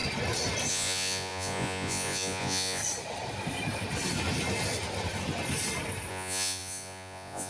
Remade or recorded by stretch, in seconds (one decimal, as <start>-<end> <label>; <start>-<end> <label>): 0.0-0.7 recorded; 0.7-2.8 remade; 2.8-6.1 recorded; 6.1-7.5 remade